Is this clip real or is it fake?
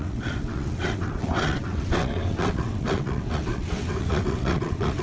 fake